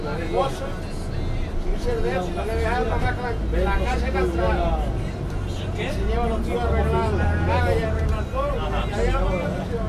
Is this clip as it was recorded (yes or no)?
yes